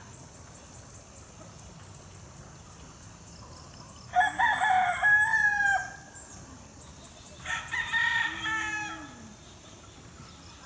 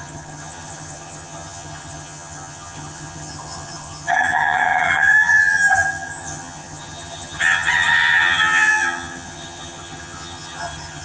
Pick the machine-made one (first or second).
second